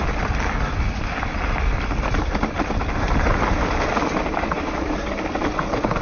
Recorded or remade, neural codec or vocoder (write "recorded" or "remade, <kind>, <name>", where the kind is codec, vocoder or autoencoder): recorded